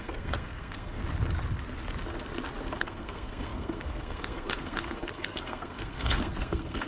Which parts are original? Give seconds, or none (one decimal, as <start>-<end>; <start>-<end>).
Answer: 1.0-2.8